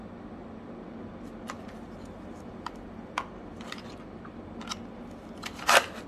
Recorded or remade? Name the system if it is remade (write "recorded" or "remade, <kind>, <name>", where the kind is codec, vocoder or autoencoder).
recorded